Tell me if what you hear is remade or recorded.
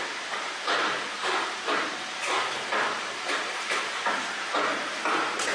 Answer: remade